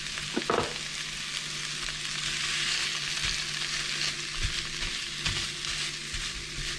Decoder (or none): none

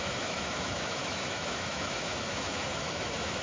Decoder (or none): autoencoder, DAC-VAE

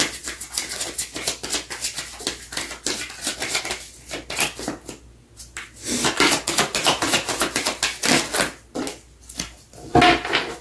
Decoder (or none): none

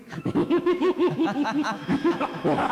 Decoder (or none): autoencoder, DAC-VAE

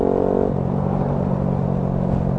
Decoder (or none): none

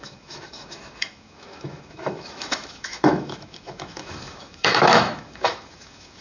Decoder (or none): autoencoder, DAC-VAE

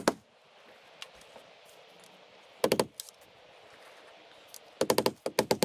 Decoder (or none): none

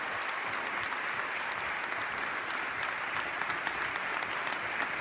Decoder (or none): none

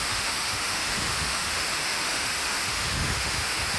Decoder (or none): autoencoder, DAC-VAE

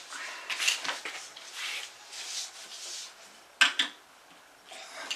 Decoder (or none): none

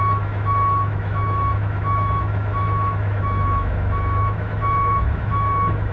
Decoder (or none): autoencoder, DAC-VAE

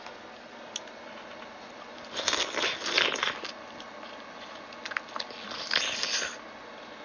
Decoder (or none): none